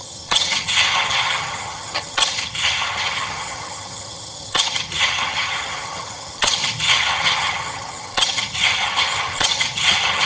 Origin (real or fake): fake